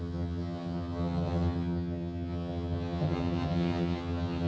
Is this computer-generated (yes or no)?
yes